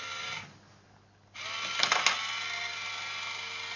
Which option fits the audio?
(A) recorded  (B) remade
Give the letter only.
A